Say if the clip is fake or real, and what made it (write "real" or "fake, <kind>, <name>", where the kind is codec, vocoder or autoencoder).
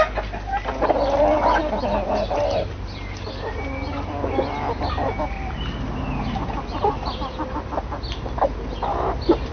real